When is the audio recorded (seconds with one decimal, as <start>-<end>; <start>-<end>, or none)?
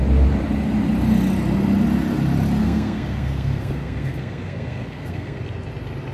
0.0-2.6; 5.4-6.1